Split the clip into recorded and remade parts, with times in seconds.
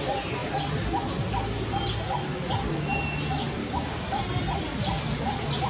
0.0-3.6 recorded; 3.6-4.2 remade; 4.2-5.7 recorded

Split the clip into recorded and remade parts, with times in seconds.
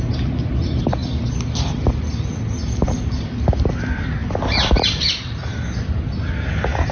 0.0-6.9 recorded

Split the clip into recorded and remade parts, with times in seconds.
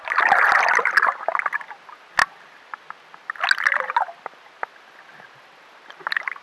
0.0-6.4 recorded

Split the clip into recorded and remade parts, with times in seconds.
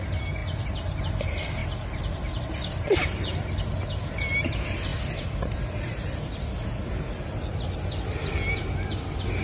0.0-9.4 recorded